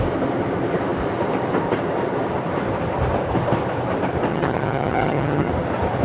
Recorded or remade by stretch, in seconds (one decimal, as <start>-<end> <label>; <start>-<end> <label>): 0.0-4.3 recorded; 4.3-5.5 remade; 5.5-6.0 recorded